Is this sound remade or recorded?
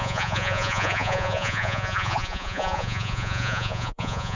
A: remade